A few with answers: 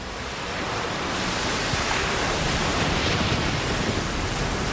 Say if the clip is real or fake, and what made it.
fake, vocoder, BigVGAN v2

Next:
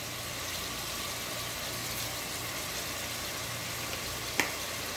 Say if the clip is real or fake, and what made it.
real